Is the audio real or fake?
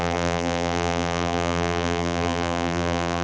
fake